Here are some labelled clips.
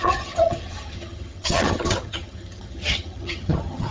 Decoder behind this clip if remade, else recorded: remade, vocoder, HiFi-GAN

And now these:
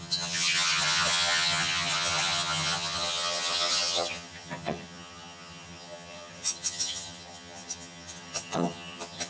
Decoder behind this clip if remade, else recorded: remade, vocoder, HiFi-GAN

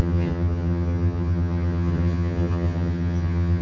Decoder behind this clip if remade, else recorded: remade, vocoder, HiFi-GAN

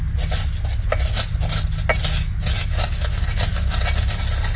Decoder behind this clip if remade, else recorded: recorded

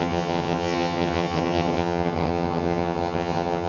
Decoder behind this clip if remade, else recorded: remade, vocoder, HiFi-GAN